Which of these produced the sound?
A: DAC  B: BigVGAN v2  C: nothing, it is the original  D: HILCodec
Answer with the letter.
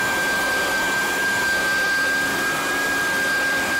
C